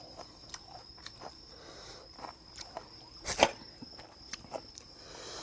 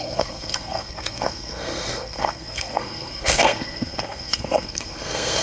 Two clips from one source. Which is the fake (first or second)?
second